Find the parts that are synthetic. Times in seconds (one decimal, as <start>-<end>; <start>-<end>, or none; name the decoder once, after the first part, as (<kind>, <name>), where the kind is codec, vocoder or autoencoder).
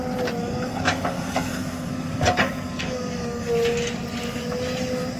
0.4-3.5 (codec, DAC)